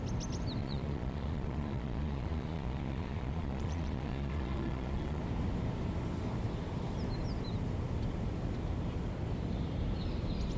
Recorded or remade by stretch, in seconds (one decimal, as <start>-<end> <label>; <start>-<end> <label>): 0.0-0.6 recorded; 0.6-5.2 remade; 5.2-10.6 recorded